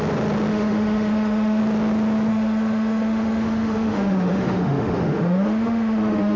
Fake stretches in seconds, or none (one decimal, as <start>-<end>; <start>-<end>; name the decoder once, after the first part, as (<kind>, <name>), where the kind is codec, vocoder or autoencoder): 0.5-1.6 (autoencoder, DAC-VAE); 2.3-6.4